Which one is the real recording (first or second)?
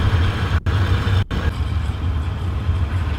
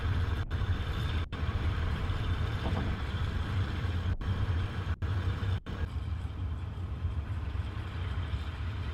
first